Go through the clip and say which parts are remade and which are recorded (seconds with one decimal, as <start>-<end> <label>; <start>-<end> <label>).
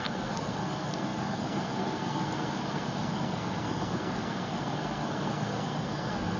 0.0-6.4 remade